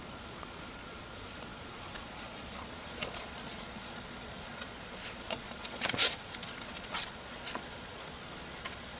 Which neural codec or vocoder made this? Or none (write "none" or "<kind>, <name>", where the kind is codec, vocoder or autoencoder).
vocoder, Vocos